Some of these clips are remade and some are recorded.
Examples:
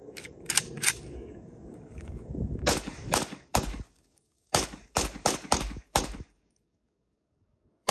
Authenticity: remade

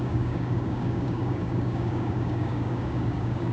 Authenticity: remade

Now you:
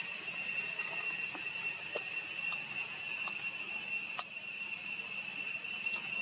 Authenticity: recorded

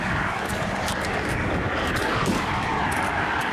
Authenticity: remade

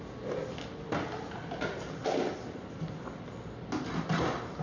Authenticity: recorded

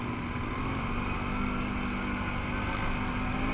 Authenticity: recorded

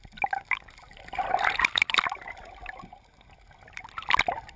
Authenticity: recorded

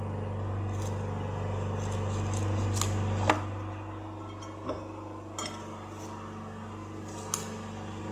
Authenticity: recorded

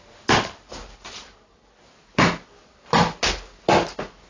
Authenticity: recorded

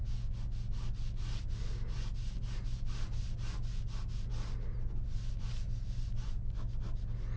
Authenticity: recorded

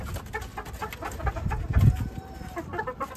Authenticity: recorded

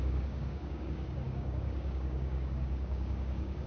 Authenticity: remade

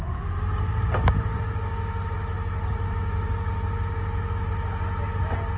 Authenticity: recorded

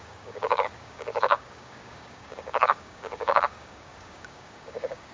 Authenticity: remade